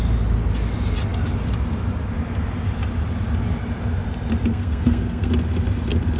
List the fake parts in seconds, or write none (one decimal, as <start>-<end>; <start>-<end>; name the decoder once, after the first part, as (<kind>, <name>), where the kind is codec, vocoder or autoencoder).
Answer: 4.5-5.3 (codec, SNAC)